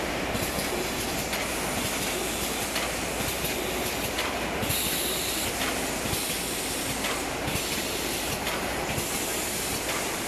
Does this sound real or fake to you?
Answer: real